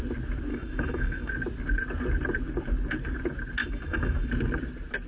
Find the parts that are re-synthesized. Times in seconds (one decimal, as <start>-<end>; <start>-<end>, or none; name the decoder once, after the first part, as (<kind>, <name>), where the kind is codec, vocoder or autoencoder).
0.5-1.3 (autoencoder, DAC-VAE); 3.6-4.3